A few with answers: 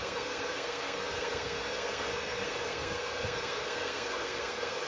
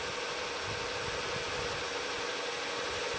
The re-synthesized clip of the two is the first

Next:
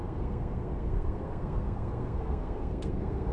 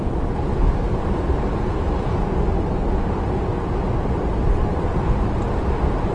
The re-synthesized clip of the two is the first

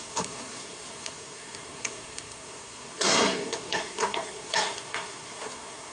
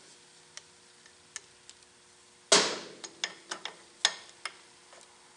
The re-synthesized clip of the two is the first